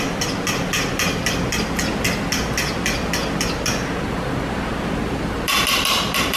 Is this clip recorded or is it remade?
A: recorded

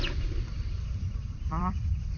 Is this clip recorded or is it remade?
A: remade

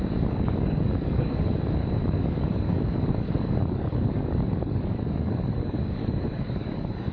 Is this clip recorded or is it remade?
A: remade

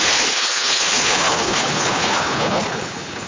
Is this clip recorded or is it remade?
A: remade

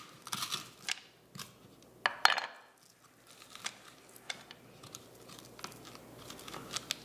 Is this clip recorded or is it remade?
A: recorded